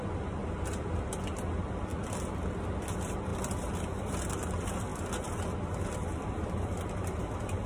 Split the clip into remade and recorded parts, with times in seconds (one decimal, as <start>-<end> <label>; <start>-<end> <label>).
0.0-7.7 recorded